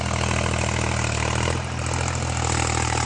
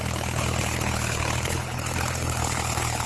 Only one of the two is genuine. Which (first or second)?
first